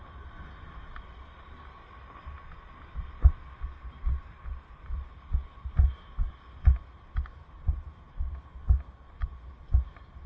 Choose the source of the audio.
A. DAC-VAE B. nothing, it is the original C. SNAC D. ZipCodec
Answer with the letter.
B